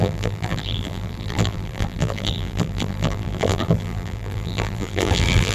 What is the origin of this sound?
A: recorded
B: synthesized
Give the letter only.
B